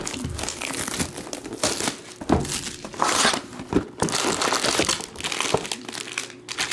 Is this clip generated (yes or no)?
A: no